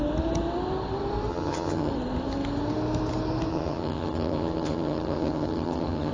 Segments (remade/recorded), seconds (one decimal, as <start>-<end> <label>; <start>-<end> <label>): 0.0-1.3 recorded; 1.3-1.9 remade; 1.9-3.5 recorded; 3.5-6.1 remade